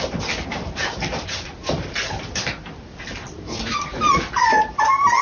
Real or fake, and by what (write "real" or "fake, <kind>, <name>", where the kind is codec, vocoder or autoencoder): fake, vocoder, BigVGAN v2